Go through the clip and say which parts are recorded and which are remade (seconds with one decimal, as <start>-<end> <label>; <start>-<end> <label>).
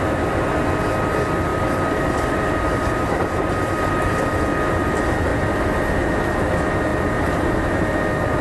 0.0-1.5 recorded; 1.5-4.4 remade; 4.4-6.9 recorded; 6.9-8.0 remade; 8.0-8.4 recorded